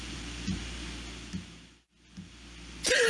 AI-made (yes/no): no